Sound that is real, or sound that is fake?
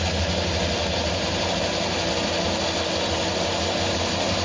real